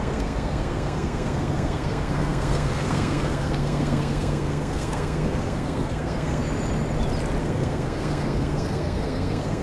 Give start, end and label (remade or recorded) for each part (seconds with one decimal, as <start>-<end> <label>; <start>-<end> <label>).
0.0-6.4 remade; 6.4-7.4 recorded; 7.4-9.6 remade

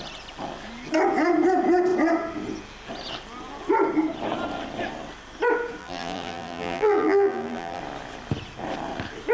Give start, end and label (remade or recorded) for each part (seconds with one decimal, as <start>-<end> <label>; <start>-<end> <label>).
0.0-5.8 recorded; 5.8-7.8 remade; 7.8-9.3 recorded

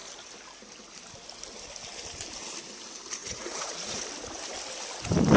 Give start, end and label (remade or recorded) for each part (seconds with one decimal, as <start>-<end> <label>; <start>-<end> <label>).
0.0-3.2 recorded; 3.2-4.0 remade; 4.0-5.4 recorded

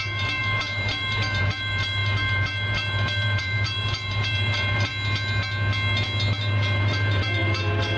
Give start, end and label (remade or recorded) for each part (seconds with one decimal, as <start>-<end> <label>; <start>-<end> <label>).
0.0-4.9 remade; 4.9-6.4 recorded; 6.4-8.0 remade

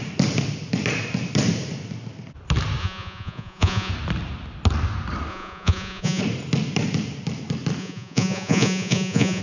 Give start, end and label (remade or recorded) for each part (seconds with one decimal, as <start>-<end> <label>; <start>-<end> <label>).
0.0-2.8 recorded; 2.8-3.9 remade; 3.9-5.3 recorded; 5.3-6.2 remade; 6.2-7.8 recorded; 7.8-9.4 remade